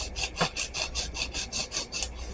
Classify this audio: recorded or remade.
recorded